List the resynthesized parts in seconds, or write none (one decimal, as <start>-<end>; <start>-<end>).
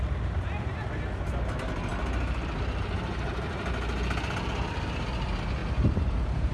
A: none